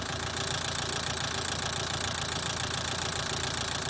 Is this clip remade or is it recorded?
recorded